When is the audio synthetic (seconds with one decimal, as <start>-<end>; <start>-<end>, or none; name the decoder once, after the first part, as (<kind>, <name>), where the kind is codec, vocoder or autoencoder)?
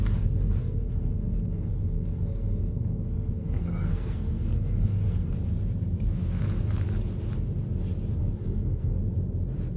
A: 0.6-5.3 (codec, SNAC); 8.2-9.0